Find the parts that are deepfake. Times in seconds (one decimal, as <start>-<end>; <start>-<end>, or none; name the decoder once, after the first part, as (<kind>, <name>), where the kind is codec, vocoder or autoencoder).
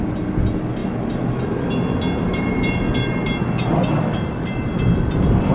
none